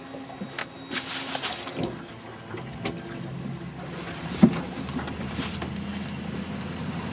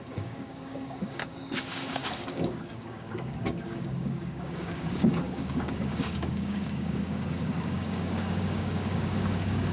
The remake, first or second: second